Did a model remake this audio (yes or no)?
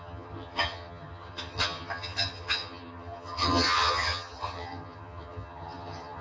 yes